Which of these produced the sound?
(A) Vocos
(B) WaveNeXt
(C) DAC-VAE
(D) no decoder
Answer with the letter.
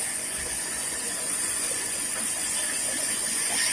A